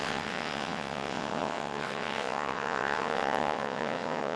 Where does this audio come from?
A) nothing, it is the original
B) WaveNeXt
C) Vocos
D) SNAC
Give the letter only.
B